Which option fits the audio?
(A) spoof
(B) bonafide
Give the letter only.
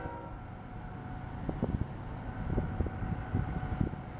B